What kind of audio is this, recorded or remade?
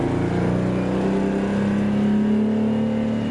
recorded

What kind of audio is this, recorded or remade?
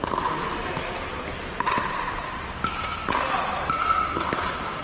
recorded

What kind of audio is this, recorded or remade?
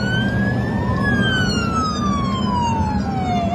recorded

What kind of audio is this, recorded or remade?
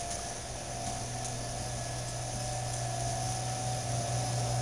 recorded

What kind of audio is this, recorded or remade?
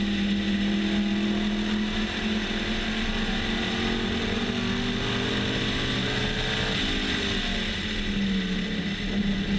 recorded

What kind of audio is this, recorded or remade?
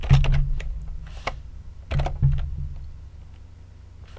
recorded